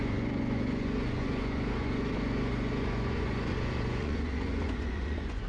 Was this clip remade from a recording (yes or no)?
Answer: yes